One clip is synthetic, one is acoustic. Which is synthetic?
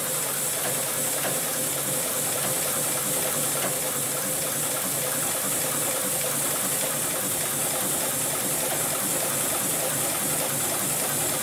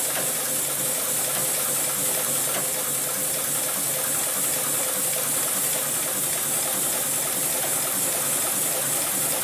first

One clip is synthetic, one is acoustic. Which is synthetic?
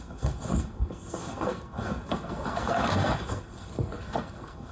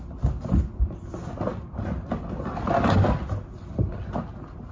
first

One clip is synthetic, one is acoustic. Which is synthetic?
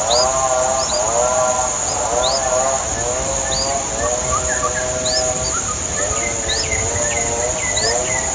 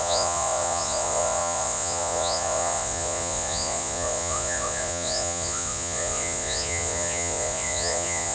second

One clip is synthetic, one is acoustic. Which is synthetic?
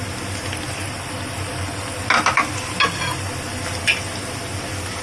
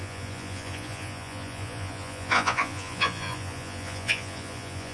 second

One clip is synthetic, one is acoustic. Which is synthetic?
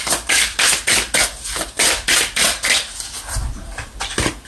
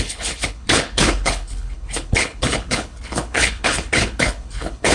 second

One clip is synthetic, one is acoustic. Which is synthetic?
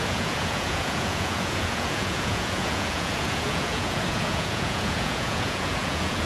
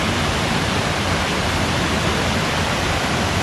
first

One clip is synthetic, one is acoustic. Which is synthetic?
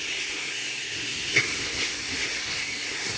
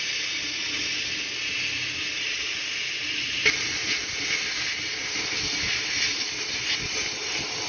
first